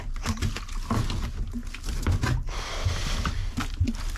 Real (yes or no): yes